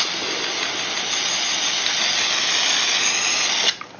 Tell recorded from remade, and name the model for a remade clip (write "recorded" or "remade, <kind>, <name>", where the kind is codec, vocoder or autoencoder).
recorded